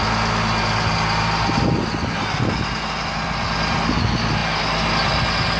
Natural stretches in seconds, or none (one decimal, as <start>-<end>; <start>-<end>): 0.0-5.6